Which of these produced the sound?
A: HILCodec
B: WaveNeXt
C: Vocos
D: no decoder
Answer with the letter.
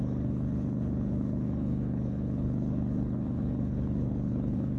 A